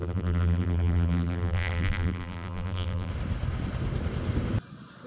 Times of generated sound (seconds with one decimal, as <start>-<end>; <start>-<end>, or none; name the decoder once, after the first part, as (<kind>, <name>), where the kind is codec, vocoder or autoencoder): 0.0-3.1 (vocoder, BigVGAN v2)